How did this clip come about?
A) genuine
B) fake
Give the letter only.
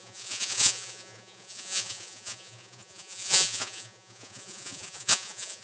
B